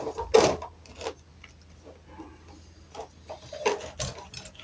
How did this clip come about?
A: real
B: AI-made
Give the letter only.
A